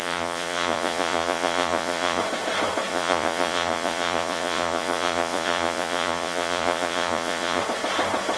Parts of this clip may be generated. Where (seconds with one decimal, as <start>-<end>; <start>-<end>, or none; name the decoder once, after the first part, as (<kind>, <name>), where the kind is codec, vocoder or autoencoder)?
0.0-2.2 (vocoder, Vocos); 2.9-7.6